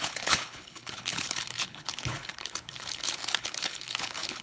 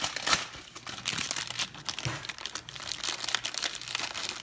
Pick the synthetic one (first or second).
first